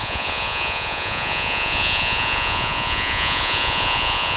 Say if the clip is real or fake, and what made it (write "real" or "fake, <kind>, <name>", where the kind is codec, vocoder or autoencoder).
fake, vocoder, Vocos